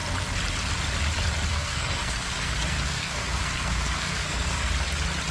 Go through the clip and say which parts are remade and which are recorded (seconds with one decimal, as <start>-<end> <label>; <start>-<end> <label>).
0.0-1.5 recorded; 1.5-4.7 remade; 4.7-5.3 recorded